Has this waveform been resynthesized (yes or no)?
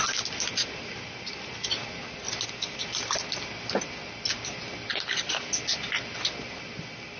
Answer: no